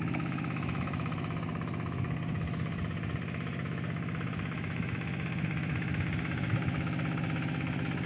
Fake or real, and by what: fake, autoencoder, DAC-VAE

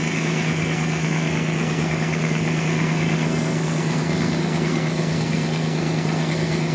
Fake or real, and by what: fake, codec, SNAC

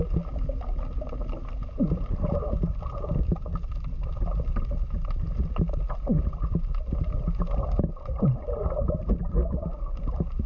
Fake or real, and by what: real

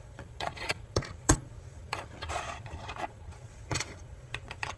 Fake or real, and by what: fake, vocoder, Vocos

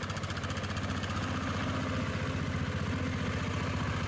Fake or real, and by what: real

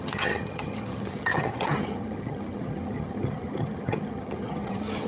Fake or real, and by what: fake, vocoder, HiFi-GAN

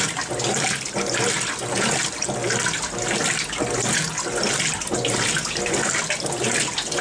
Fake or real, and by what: real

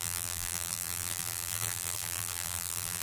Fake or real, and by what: fake, vocoder, BigVGAN v2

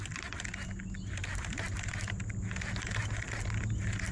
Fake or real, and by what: real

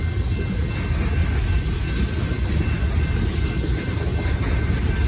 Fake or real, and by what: real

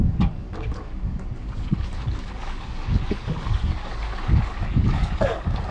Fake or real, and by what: fake, codec, DAC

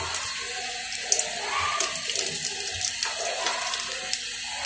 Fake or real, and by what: real